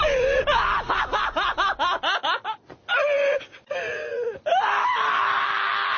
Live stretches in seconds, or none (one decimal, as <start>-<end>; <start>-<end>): 0.0-6.0